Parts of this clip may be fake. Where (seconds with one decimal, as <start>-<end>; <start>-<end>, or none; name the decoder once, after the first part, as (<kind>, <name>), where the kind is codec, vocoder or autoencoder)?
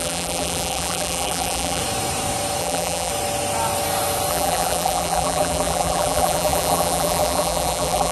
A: 0.0-1.8 (vocoder, BigVGAN v2); 2.6-3.1; 4.3-8.1